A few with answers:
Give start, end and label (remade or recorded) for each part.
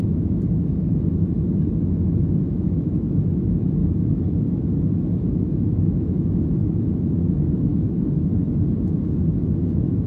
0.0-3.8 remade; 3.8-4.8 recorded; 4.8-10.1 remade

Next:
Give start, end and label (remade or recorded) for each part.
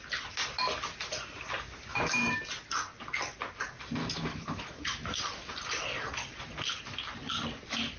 0.0-1.9 recorded; 1.9-2.4 remade; 2.4-4.0 recorded; 4.0-5.2 remade; 5.2-8.0 recorded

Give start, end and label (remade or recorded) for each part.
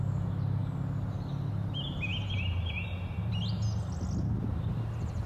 0.0-5.3 recorded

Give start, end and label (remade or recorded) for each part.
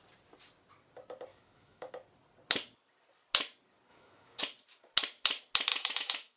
0.0-1.3 recorded; 1.3-1.9 remade; 1.9-3.9 recorded; 3.9-4.4 remade; 4.4-5.7 recorded; 5.7-6.4 remade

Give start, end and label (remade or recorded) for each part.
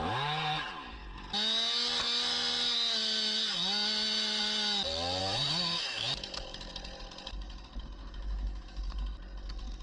0.0-5.2 recorded; 5.2-6.7 remade; 6.7-8.0 recorded; 8.0-8.8 remade; 8.8-9.8 recorded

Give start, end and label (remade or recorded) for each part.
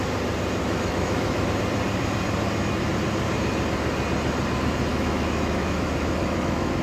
0.0-0.6 recorded; 0.6-1.5 remade; 1.5-4.9 recorded; 4.9-6.8 remade